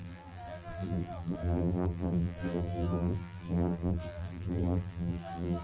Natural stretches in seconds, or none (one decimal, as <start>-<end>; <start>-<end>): none